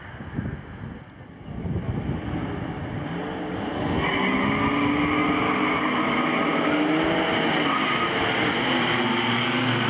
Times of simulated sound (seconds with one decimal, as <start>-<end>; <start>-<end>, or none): none